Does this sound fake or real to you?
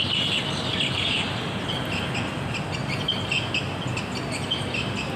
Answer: real